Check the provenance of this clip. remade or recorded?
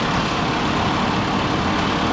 recorded